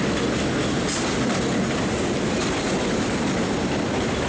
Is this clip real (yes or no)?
yes